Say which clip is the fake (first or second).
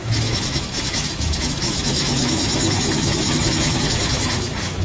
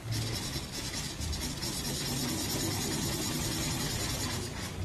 first